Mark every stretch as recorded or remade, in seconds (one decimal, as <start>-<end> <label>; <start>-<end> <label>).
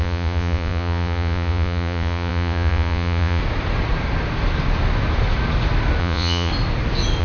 0.0-3.4 remade; 3.4-6.0 recorded; 6.0-6.5 remade; 6.5-7.2 recorded